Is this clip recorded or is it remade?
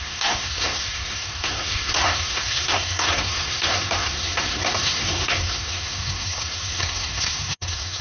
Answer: remade